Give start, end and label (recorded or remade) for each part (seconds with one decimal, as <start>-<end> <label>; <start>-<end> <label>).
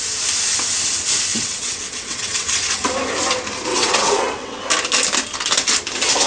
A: 0.0-1.3 recorded; 1.3-2.8 remade; 2.8-3.7 recorded; 3.7-4.6 remade; 4.6-6.3 recorded